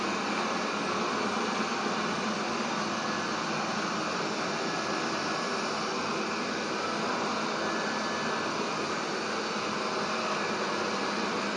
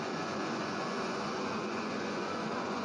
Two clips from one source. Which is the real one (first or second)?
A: first